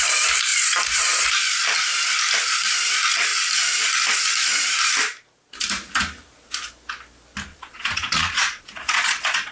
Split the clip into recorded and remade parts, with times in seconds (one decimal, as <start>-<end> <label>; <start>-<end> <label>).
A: 0.0-7.5 recorded; 7.5-9.5 remade